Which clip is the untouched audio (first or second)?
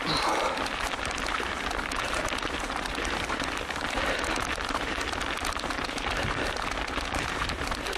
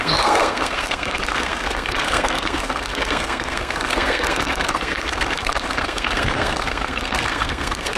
first